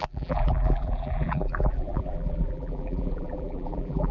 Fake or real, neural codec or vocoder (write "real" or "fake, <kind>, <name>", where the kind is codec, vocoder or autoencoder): fake, vocoder, BigVGAN v2